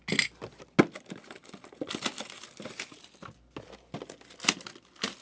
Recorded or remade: recorded